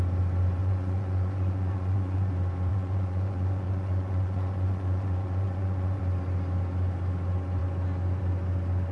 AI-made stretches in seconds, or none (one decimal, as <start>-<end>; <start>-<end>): 0.6-2.3; 2.7-6.0